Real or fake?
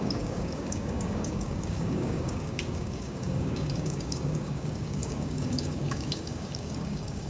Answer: fake